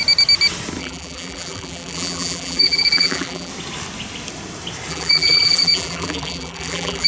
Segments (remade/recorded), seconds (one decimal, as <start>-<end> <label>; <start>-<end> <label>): 0.0-0.8 recorded; 0.8-3.5 remade; 3.5-4.9 recorded; 4.9-7.1 remade